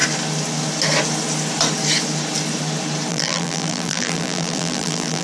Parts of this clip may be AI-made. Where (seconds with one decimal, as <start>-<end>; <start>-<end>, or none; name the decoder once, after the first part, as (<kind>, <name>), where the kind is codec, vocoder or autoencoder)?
3.1-5.2 (vocoder, BigVGAN v2)